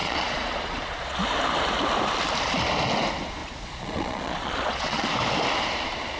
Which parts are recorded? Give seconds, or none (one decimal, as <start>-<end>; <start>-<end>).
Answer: 1.2-3.4; 5.1-6.2